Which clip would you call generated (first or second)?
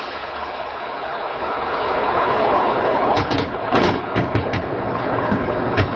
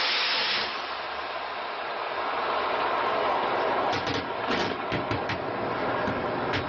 first